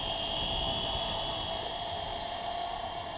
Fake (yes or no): no